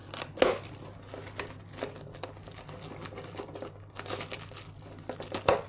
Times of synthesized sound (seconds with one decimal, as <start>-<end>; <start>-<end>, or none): none